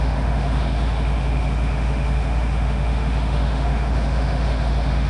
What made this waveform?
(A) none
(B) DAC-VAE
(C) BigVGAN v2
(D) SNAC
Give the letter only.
B